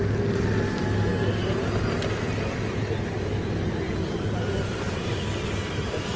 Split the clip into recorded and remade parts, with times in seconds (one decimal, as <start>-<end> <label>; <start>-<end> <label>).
0.0-2.8 recorded; 2.8-5.2 remade; 5.2-6.2 recorded